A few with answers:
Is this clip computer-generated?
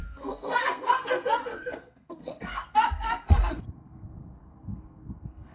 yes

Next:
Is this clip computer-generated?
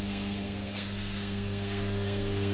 yes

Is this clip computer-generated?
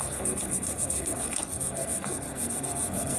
yes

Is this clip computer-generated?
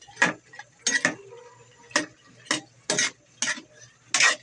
no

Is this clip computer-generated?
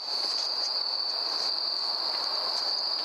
no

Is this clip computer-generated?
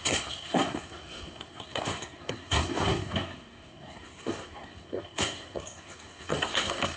yes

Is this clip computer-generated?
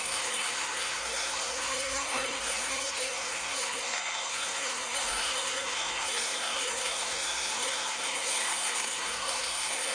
yes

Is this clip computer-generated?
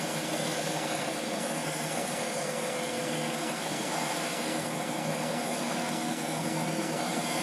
yes